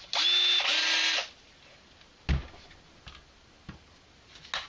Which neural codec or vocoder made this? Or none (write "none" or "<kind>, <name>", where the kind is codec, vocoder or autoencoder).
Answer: none